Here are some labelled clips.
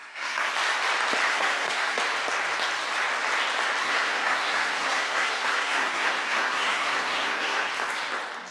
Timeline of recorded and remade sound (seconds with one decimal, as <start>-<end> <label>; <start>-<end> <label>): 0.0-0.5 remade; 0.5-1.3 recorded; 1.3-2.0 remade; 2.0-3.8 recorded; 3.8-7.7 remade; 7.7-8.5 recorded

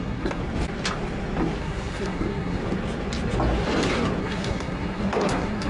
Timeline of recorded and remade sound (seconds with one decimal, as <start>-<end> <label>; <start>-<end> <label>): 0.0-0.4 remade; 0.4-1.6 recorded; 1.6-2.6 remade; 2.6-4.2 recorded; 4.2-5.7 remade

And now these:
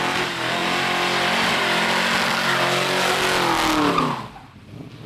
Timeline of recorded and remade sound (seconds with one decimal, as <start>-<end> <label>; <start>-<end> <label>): 0.0-5.1 recorded

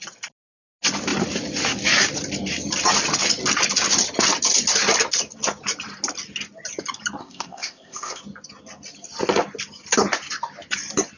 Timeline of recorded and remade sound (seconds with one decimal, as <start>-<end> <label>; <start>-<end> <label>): 0.0-7.2 recorded; 7.2-8.2 remade; 8.2-11.2 recorded

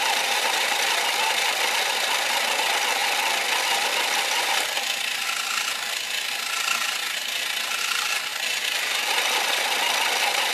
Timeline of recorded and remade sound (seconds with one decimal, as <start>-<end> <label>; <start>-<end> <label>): 0.0-10.5 recorded

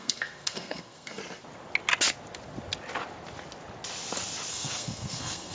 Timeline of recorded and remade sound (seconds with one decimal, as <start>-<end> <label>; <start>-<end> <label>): 0.0-1.2 remade; 1.2-4.5 recorded; 4.5-5.5 remade